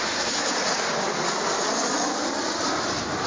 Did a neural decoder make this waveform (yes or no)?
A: no